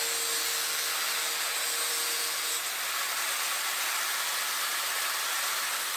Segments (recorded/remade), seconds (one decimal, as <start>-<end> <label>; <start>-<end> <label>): 0.0-6.0 recorded